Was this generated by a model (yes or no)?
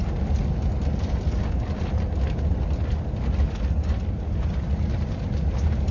no